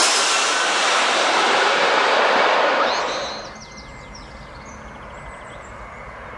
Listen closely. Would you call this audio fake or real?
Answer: real